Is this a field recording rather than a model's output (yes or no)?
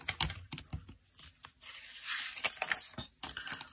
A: yes